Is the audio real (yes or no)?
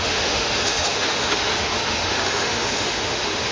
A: no